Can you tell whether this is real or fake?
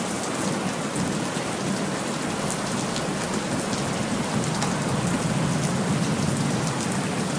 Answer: real